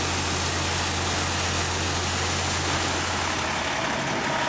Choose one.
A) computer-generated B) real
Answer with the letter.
B